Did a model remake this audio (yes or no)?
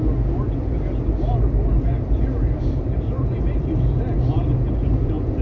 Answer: no